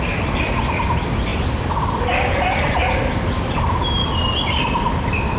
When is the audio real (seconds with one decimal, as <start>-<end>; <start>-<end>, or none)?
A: 0.0-5.4